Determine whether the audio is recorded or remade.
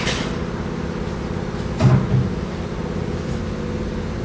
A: recorded